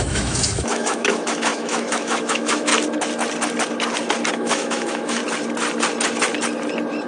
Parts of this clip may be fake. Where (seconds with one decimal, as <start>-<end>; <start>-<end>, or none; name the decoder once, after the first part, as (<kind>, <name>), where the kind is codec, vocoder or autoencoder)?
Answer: 0.0-2.7 (autoencoder, DAC-VAE); 4.3-5.2